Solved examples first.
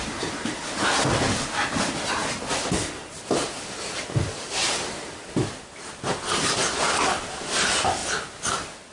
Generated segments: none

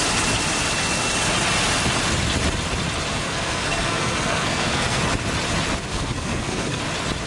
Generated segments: 3.1-5.0 (codec, SNAC); 5.9-6.8

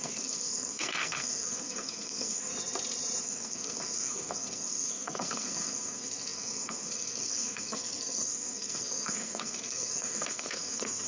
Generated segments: 0.0-2.5 (codec, SNAC); 3.2-11.1

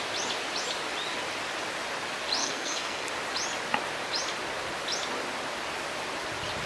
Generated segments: 2.4-3.1 (codec, SNAC)

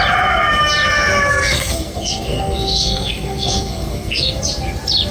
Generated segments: 1.3-4.4 (codec, SNAC)

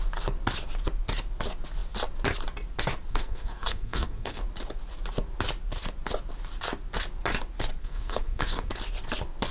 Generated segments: 3.1-4.4 (codec, SNAC); 7.8-8.7